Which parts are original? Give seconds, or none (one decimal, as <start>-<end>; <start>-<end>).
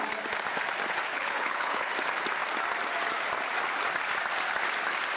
0.0-1.1; 1.9-5.2